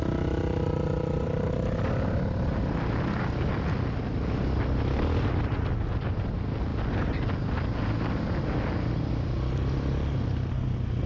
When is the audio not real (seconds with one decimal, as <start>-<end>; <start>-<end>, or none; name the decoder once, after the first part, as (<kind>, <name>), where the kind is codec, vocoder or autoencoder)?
none